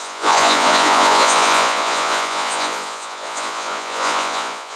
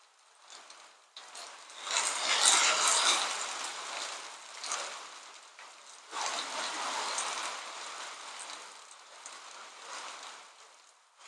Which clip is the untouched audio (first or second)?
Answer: second